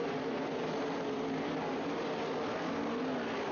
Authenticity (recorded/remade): recorded